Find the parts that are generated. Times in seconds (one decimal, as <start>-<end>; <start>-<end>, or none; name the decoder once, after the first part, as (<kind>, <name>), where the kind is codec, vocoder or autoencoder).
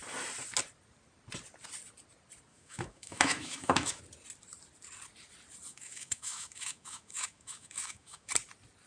2.5-4.0 (autoencoder, DAC-VAE); 5.7-8.3